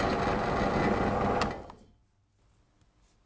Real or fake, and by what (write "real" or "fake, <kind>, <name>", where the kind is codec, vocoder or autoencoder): real